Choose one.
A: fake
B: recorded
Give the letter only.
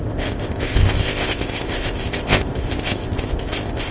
A